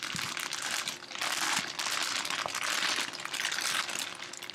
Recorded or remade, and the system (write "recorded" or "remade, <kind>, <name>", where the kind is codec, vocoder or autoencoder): recorded